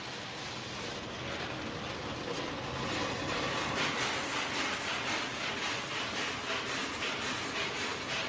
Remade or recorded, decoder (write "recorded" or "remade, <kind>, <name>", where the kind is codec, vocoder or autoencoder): recorded